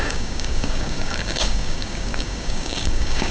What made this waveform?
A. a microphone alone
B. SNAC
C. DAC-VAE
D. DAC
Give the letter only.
D